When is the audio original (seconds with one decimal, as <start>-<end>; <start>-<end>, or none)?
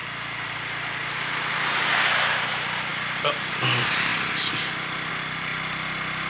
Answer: 4.1-5.1; 5.5-6.3